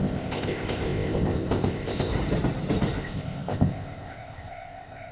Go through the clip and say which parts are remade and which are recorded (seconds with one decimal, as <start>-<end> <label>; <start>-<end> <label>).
0.0-2.1 remade; 2.1-3.0 recorded; 3.0-5.1 remade